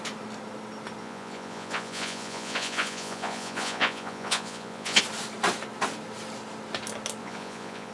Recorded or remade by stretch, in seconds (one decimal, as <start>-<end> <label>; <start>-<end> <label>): 0.0-1.0 recorded; 1.0-5.0 remade; 5.0-7.2 recorded; 7.2-7.9 remade

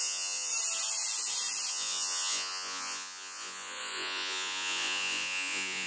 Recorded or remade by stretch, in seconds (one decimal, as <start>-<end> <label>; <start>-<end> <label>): 0.0-0.5 remade; 0.5-1.7 recorded; 1.7-5.9 remade

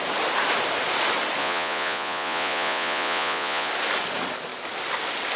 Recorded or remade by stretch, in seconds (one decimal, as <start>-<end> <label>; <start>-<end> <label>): 0.0-1.4 recorded; 1.4-3.7 remade; 3.7-5.4 recorded

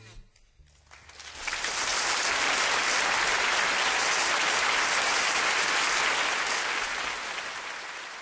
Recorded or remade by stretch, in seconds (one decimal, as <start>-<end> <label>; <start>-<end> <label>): 0.0-8.2 recorded